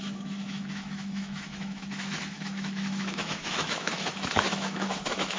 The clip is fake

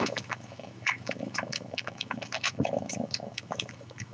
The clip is fake